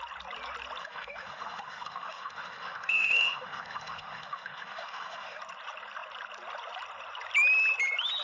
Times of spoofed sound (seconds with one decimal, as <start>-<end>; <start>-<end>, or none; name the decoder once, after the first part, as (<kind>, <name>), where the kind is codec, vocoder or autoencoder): 0.8-5.4 (autoencoder, DAC-VAE)